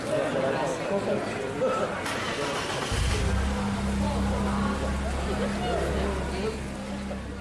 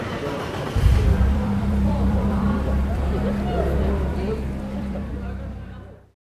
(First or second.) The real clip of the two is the first